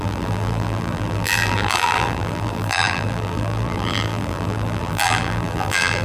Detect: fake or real fake